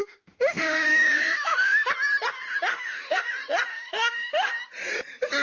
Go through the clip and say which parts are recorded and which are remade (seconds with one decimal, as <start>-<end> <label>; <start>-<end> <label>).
0.0-1.9 remade; 1.9-2.7 recorded; 2.7-3.3 remade; 3.3-3.7 recorded; 3.7-4.5 remade; 4.5-5.4 recorded